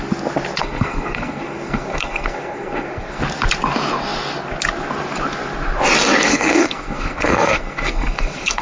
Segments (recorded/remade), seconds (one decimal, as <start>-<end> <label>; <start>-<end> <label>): 0.0-0.6 recorded; 0.6-3.2 remade; 3.2-6.3 recorded; 6.3-8.6 remade